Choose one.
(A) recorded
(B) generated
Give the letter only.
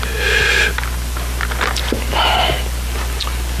A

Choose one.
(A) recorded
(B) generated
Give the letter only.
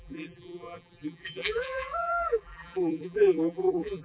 B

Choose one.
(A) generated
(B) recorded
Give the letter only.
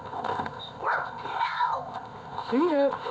A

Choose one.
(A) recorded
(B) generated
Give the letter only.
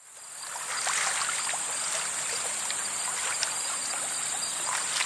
A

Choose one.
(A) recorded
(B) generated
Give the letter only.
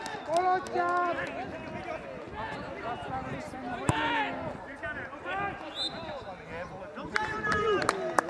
A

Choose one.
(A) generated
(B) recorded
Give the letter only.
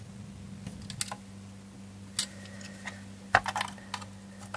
B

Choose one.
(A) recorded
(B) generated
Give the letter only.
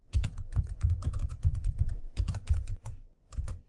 B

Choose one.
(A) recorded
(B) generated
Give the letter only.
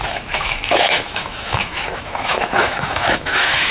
B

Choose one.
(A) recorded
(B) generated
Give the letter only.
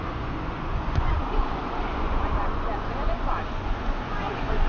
B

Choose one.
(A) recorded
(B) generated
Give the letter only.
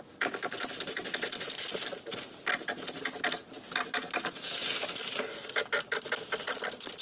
A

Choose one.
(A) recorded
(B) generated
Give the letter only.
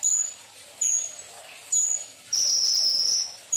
A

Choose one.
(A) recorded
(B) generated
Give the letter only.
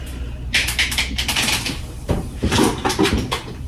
B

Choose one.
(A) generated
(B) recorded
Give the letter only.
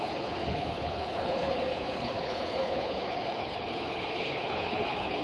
A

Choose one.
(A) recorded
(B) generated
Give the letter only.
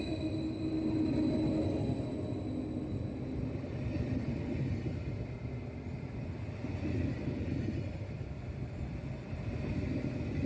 A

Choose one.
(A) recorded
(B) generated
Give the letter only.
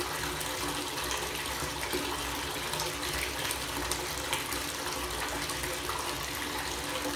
A